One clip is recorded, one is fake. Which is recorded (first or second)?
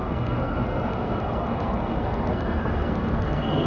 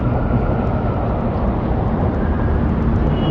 second